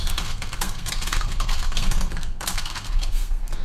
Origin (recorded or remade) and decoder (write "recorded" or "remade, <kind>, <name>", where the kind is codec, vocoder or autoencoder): remade, codec, SNAC